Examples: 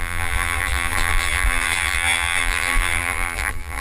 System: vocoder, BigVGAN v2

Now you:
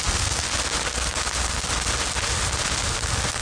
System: none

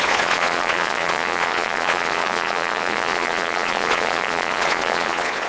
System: vocoder, Vocos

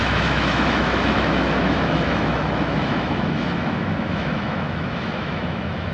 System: autoencoder, DAC-VAE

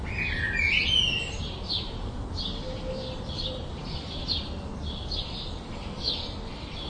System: none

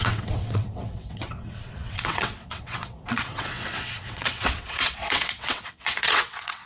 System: vocoder, WaveNeXt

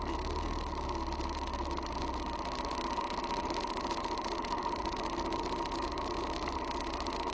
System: none